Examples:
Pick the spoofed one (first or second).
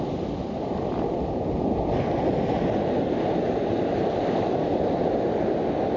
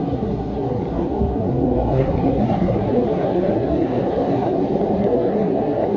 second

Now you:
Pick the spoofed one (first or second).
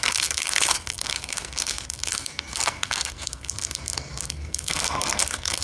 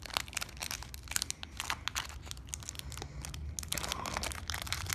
first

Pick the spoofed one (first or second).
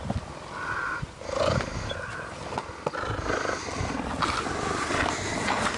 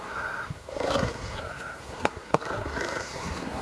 second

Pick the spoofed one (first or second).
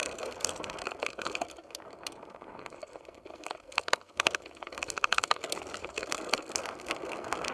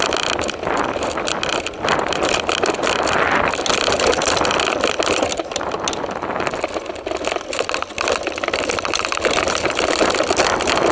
first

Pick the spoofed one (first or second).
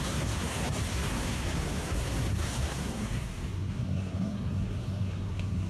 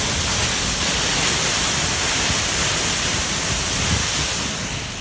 first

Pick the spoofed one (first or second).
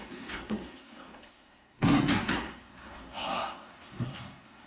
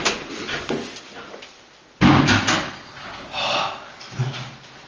first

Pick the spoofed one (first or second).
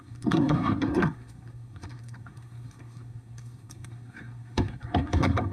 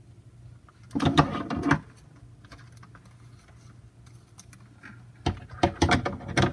first